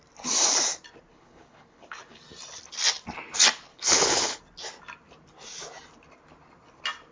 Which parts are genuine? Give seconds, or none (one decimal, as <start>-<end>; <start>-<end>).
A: 0.0-1.1; 2.2-3.7; 4.4-7.1